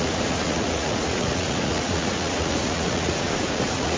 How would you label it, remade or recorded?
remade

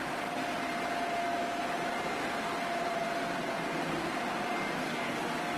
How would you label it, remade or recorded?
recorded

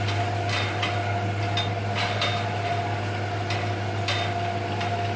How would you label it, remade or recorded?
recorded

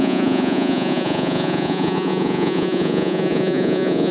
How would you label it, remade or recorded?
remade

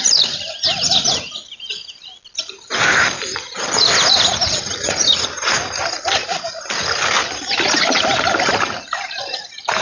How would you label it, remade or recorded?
recorded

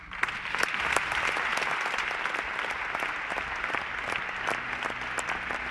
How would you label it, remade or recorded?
recorded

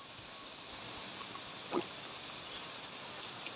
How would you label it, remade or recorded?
recorded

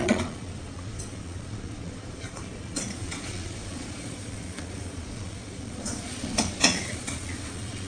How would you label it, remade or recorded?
remade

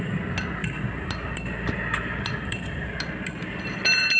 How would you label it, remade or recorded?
recorded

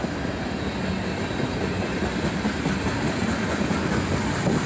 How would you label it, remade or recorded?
recorded